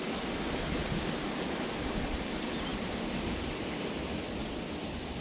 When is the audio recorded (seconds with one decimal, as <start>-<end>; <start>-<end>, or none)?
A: 0.0-5.2